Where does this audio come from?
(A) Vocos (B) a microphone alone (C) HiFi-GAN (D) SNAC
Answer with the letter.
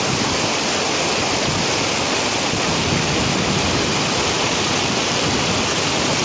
B